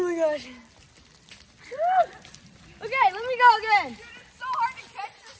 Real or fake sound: real